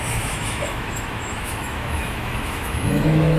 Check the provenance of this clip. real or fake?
fake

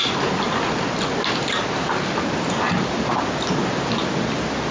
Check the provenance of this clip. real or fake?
real